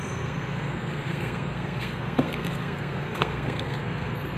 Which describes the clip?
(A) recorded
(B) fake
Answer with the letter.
B